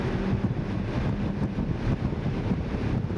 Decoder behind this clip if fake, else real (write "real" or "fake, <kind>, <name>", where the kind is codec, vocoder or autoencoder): real